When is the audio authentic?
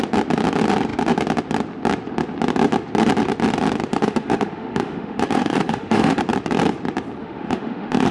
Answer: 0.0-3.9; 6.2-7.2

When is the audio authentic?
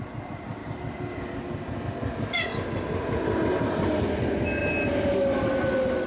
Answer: 0.0-6.1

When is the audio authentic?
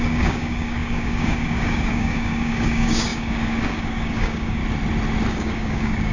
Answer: 4.6-5.3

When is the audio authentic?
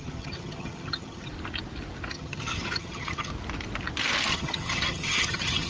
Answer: 1.3-2.1; 3.3-4.3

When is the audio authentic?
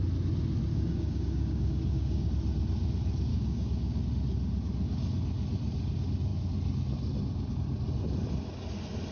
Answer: 0.0-0.7; 2.3-3.3; 4.0-9.1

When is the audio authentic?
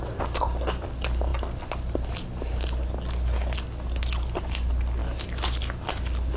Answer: 0.0-6.4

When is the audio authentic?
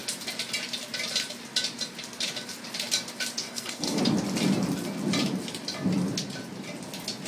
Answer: 0.0-3.5; 4.0-7.3